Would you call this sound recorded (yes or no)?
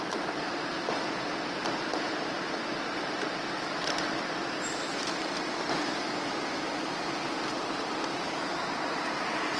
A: no